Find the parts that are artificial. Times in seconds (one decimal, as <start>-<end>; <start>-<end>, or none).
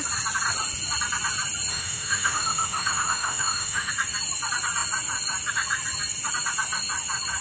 1.7-3.9